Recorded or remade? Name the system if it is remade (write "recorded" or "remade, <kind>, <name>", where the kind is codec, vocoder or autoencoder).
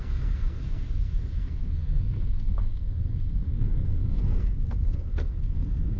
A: remade, codec, SNAC